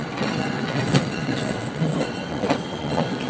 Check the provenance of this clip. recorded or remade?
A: remade